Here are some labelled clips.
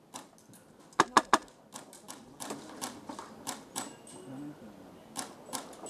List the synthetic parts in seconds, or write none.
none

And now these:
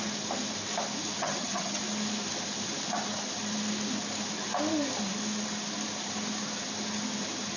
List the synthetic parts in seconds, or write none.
1.2-1.8 (vocoder, HiFi-GAN)